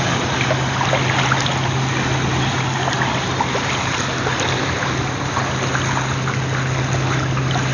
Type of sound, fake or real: real